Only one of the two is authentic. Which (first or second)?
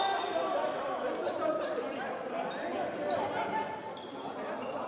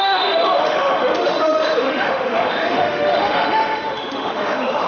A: first